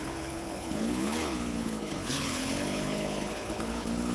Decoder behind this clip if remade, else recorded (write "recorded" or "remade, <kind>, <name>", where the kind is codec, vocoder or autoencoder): remade, codec, HILCodec